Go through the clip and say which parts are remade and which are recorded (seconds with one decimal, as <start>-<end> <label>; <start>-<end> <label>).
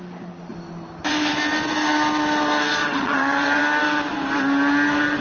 0.0-2.8 recorded; 2.8-3.6 remade; 3.6-5.2 recorded